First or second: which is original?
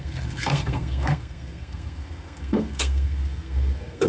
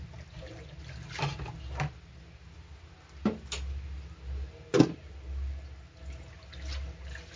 second